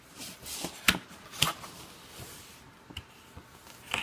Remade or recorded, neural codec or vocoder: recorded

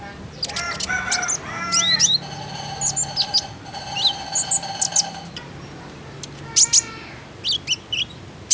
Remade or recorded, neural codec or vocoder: recorded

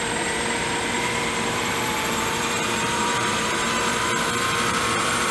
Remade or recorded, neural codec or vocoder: remade, vocoder, BigVGAN v2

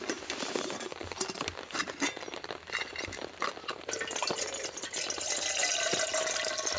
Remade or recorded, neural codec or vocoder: recorded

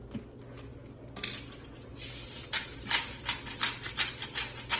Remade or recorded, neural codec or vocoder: recorded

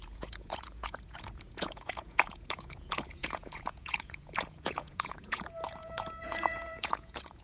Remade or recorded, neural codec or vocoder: remade, vocoder, Vocos